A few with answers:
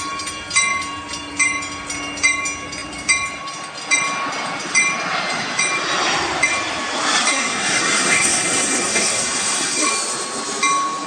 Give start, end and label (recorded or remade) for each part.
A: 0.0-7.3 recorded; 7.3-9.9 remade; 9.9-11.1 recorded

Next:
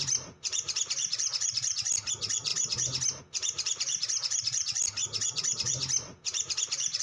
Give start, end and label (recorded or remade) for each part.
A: 0.0-2.5 remade; 2.5-3.2 recorded; 3.2-7.0 remade